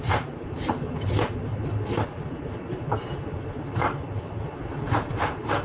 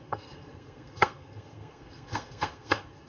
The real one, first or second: first